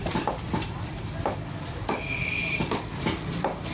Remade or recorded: remade